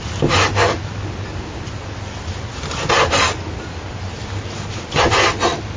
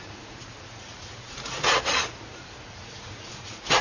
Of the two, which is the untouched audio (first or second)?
first